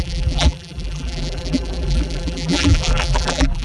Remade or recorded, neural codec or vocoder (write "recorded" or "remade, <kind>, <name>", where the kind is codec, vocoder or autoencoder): remade, vocoder, BigVGAN v2